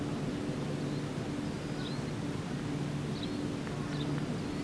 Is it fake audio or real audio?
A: real